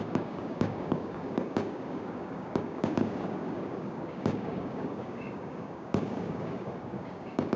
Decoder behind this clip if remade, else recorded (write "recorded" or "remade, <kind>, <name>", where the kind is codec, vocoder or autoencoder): remade, codec, DAC